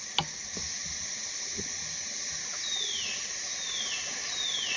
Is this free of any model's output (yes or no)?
yes